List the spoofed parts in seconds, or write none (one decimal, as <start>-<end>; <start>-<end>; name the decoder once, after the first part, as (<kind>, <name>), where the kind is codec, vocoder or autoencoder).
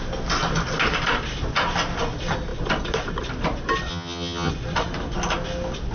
3.9-4.5 (vocoder, HiFi-GAN)